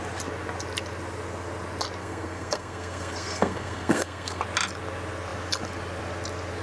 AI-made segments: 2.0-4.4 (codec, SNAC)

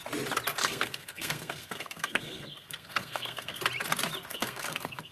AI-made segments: 0.6-3.6 (codec, SNAC); 4.3-5.1

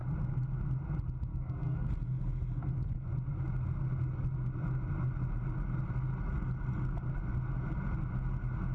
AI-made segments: 1.3-1.9 (codec, SNAC)

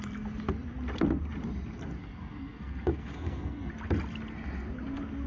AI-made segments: 2.0-3.7 (codec, SNAC)

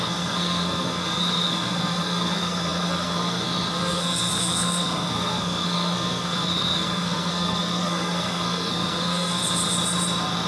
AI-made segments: 0.0-9.4 (codec, SNAC)

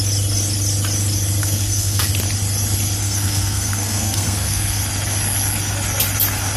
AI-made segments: 1.4-2.1 (codec, SNAC); 3.0-4.8

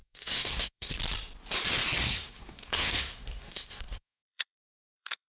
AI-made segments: 0.0-1.0 (codec, SNAC); 2.0-5.3